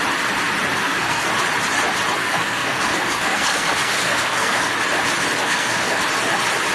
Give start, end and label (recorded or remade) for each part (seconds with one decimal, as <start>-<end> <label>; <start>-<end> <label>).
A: 0.0-0.8 recorded; 0.8-1.3 remade; 1.3-2.2 recorded; 2.2-4.7 remade; 4.7-5.4 recorded; 5.4-6.0 remade; 6.0-6.7 recorded